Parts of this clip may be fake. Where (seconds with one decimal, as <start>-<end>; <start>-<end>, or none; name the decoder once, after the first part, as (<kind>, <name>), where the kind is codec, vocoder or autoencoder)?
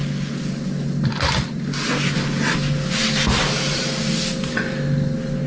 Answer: none